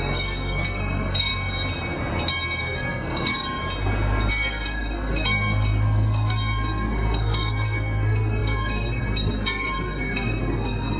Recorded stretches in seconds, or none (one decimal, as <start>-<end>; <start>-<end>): 1.3-2.6; 3.6-4.3